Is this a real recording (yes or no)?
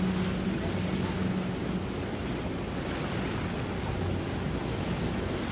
yes